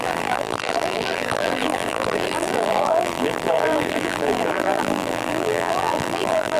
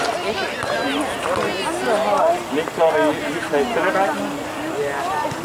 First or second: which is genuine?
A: second